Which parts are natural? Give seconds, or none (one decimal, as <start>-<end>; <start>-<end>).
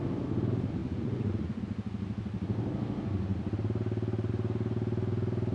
0.0-0.8; 1.6-5.5